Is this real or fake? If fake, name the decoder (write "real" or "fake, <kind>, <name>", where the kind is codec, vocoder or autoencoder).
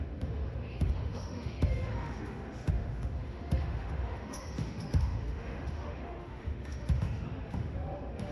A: fake, autoencoder, DAC-VAE